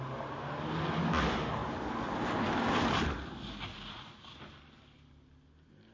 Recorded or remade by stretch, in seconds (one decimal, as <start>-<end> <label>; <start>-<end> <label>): 0.0-5.9 recorded